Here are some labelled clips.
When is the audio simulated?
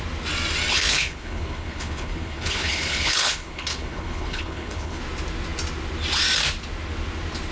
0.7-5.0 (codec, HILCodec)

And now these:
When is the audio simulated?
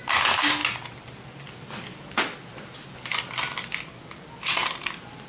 none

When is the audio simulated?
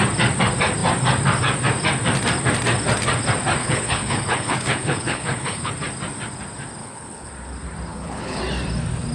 3.6-5.7 (codec, HILCodec); 6.8-7.3; 7.9-8.4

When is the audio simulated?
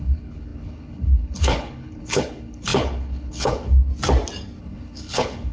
0.0-3.9 (codec, HILCodec); 4.6-5.5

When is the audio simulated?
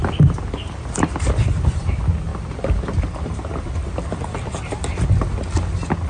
none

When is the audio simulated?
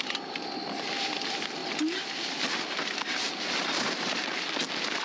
none